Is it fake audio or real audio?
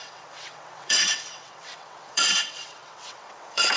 fake